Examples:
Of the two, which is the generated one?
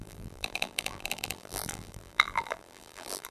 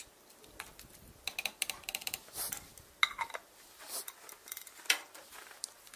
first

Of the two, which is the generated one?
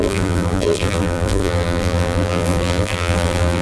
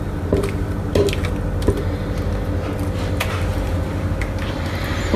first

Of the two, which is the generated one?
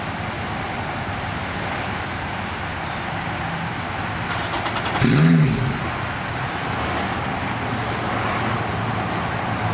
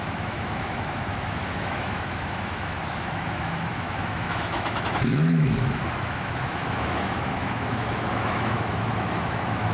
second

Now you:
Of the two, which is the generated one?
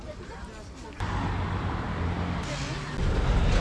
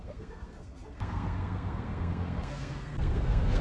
second